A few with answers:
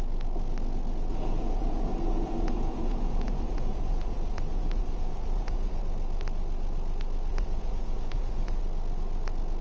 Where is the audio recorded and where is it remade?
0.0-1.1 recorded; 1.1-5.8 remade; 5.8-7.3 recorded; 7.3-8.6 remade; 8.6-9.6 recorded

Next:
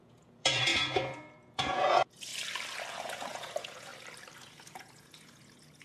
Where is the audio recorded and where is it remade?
0.0-2.3 remade; 2.3-2.9 recorded; 2.9-3.9 remade; 3.9-4.4 recorded; 4.4-5.8 remade

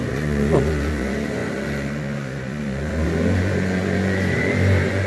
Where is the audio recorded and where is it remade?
0.0-5.1 remade

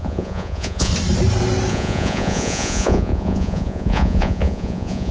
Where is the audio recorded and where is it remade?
0.0-0.9 remade; 0.9-1.7 recorded; 1.7-5.1 remade